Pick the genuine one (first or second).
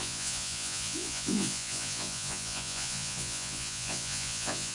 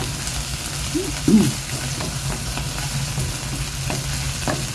second